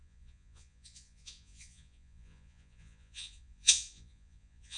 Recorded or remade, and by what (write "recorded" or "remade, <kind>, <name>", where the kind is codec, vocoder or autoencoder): remade, vocoder, Vocos